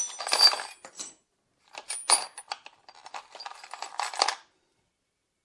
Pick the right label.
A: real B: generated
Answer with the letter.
A